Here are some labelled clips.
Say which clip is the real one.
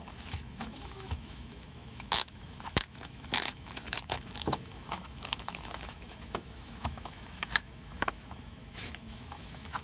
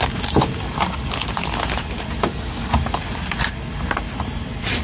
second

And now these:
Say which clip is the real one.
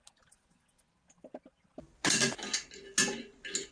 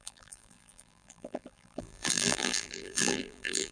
first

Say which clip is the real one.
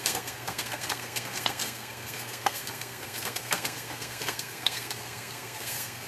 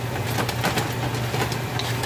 second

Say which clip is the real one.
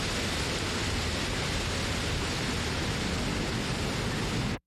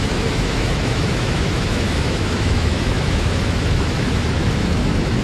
first